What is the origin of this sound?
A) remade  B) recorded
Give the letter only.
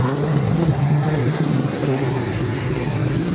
A